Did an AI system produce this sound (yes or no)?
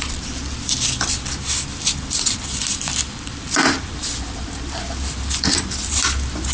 yes